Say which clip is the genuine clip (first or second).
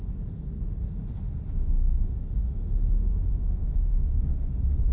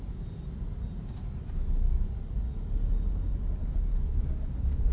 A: second